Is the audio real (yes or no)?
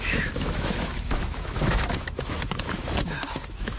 no